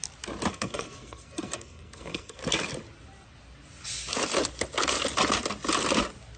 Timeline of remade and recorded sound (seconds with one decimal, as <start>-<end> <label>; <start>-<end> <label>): 0.0-0.5 recorded; 0.5-2.4 remade; 2.4-6.4 recorded